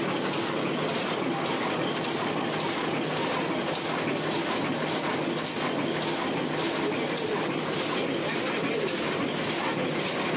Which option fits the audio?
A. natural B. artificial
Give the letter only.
A